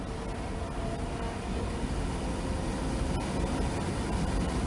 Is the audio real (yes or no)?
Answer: yes